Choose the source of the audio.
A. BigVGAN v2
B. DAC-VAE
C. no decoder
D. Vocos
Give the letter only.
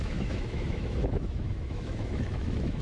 B